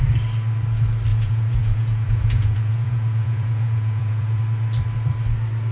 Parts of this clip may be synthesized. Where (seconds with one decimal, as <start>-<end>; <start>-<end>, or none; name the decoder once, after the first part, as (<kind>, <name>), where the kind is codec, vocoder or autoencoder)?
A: 1.1-4.4 (vocoder, Vocos)